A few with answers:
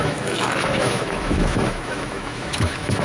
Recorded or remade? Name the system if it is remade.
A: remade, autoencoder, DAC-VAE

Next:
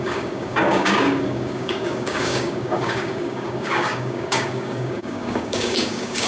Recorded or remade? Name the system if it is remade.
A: remade, codec, DAC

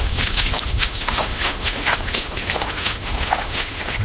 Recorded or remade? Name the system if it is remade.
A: remade, autoencoder, DAC-VAE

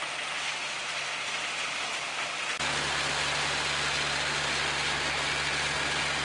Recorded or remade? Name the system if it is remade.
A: recorded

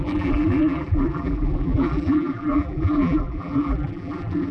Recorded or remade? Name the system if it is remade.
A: remade, vocoder, BigVGAN v2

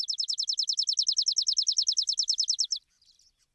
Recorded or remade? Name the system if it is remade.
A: recorded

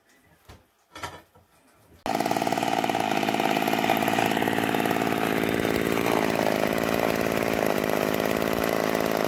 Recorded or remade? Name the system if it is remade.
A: recorded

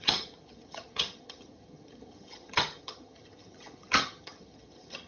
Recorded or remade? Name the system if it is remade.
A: remade, vocoder, HiFi-GAN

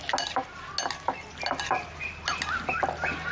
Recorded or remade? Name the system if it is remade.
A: recorded